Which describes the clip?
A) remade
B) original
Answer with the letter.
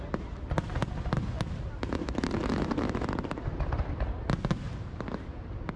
B